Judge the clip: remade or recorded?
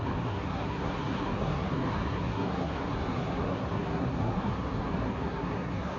remade